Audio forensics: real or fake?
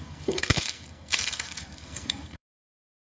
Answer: fake